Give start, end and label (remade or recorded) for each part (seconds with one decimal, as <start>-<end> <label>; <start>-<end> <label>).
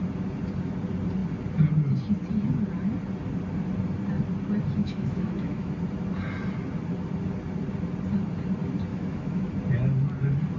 0.0-4.8 recorded; 4.8-5.7 remade; 5.7-8.9 recorded; 8.9-9.5 remade; 9.5-10.6 recorded